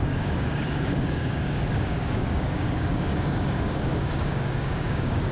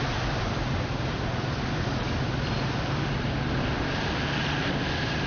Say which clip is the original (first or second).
second